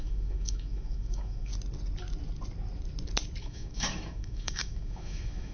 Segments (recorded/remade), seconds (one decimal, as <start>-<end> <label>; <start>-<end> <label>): 0.0-1.5 remade; 1.5-3.4 recorded; 3.4-5.5 remade